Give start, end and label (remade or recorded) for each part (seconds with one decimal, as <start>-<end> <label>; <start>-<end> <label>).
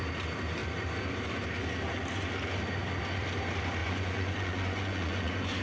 0.0-3.8 recorded; 3.8-5.6 remade